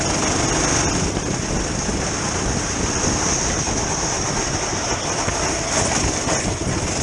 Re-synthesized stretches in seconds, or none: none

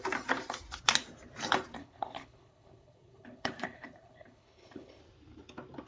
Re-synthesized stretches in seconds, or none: 1.8-5.0 (codec, HILCodec)

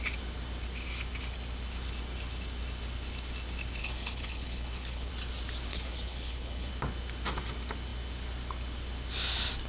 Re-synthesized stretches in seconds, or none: 3.8-5.1 (codec, HILCodec); 5.7-6.7